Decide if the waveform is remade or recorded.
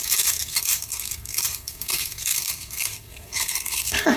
remade